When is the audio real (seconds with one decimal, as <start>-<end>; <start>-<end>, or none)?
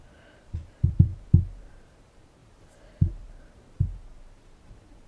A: 1.1-1.7; 2.4-3.1